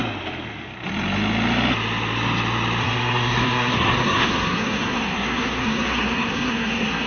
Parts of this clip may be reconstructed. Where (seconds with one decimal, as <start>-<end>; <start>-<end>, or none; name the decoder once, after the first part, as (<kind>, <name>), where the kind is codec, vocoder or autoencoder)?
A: 2.8-7.1 (codec, SNAC)